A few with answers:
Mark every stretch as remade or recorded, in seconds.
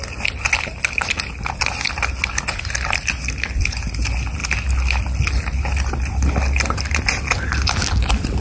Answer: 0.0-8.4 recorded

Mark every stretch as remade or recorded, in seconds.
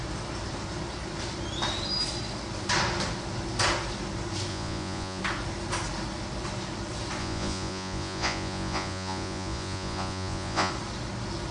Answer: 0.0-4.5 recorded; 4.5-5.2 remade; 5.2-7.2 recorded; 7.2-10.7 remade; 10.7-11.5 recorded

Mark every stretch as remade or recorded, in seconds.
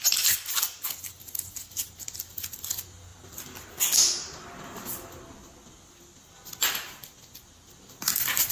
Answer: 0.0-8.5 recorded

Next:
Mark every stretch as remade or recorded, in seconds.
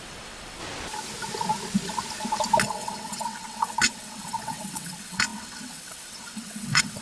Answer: 0.0-0.6 remade; 0.6-2.6 recorded; 2.6-7.0 remade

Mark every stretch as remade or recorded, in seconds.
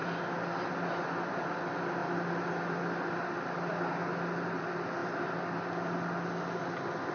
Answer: 0.0-7.1 recorded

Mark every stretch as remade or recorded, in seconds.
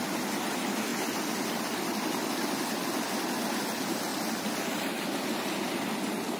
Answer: 0.0-6.4 recorded